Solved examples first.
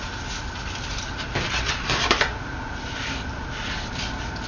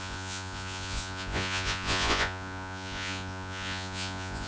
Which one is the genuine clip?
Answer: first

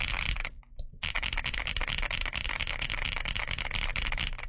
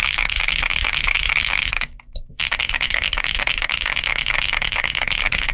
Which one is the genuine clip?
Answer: first